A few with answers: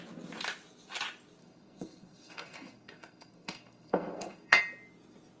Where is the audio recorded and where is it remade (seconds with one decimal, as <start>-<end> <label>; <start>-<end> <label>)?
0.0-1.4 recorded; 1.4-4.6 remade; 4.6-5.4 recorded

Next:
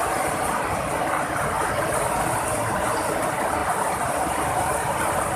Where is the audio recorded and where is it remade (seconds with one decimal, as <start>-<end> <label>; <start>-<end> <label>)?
0.0-3.6 recorded; 3.6-4.9 remade; 4.9-5.4 recorded

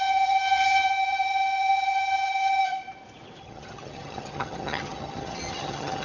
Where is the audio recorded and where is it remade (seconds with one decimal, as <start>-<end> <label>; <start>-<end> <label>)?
0.0-2.6 remade; 2.6-3.4 recorded; 3.4-6.0 remade

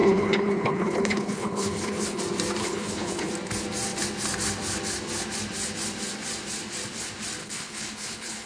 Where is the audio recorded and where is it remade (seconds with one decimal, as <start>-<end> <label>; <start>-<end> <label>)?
0.0-2.2 remade; 2.2-2.6 recorded; 2.6-3.3 remade; 3.3-7.4 recorded; 7.4-8.5 remade